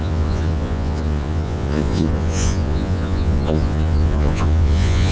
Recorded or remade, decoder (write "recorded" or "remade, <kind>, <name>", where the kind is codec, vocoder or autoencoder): remade, vocoder, Vocos